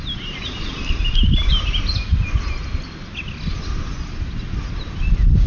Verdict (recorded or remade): recorded